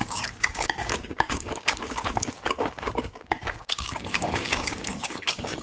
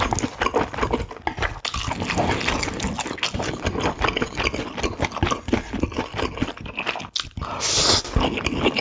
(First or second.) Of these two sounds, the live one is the second